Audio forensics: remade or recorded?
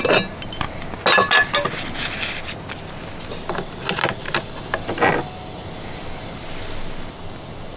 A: recorded